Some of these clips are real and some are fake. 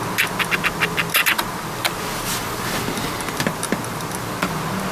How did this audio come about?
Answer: real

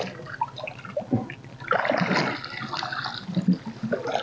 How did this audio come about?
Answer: real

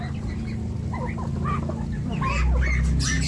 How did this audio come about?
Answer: real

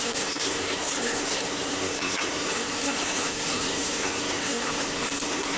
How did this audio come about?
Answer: fake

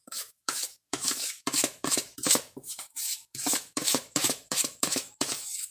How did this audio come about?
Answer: fake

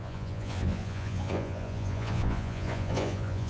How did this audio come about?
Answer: fake